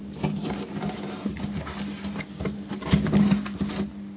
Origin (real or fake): real